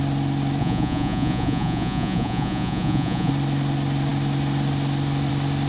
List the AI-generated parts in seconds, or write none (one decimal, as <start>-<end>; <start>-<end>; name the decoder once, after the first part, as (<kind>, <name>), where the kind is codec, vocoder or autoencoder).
0.6-3.3 (vocoder, Vocos)